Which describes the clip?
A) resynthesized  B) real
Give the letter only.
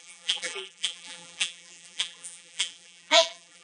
A